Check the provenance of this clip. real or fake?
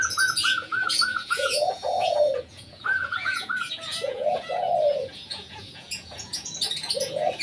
fake